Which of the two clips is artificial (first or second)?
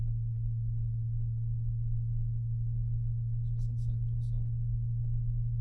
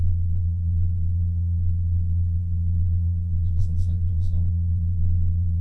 second